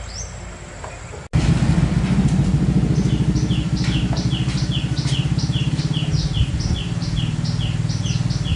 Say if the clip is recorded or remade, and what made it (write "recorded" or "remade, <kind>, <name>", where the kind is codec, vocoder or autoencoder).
recorded